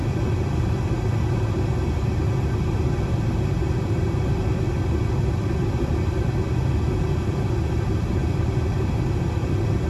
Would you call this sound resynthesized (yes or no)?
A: no